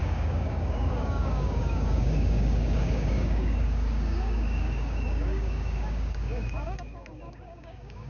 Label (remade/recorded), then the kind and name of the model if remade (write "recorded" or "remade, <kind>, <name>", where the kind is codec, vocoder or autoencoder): remade, codec, DAC